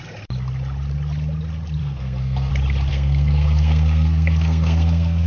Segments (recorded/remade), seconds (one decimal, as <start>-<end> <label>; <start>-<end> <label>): 0.0-1.8 recorded; 1.8-2.5 remade; 2.5-2.9 recorded; 2.9-5.3 remade

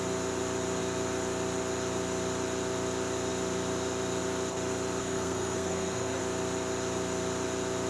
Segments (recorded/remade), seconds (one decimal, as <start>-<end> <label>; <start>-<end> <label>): 0.0-5.0 recorded; 5.0-6.2 remade; 6.2-7.9 recorded

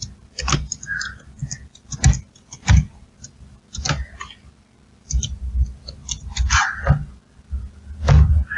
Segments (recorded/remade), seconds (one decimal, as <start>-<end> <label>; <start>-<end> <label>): 0.0-8.6 recorded

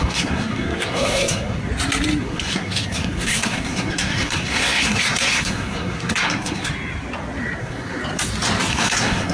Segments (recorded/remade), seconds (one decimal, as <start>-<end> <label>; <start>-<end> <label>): 0.0-1.6 remade; 1.6-2.2 recorded; 2.2-6.7 remade; 6.7-7.6 recorded; 7.6-8.0 remade; 8.0-8.7 recorded; 8.7-9.3 remade

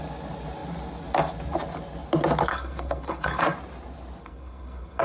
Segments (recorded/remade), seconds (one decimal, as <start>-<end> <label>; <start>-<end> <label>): 0.0-2.5 recorded; 2.5-3.4 remade; 3.4-4.2 recorded; 4.2-5.0 remade

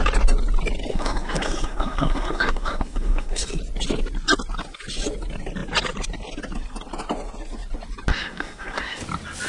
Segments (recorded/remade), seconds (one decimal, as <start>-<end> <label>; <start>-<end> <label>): 0.0-0.9 recorded; 0.9-3.6 remade; 3.6-8.1 recorded; 8.1-9.0 remade; 9.0-9.5 recorded